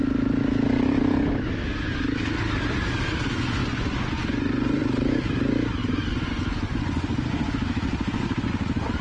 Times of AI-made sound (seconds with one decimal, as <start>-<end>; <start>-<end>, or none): 3.6-4.8; 5.8-7.5